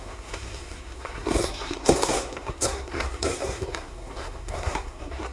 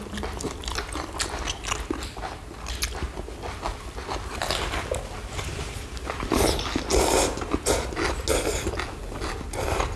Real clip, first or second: second